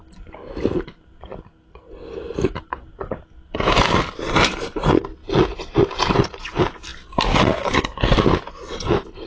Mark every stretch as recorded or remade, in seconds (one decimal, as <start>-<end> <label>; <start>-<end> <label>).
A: 0.0-9.3 recorded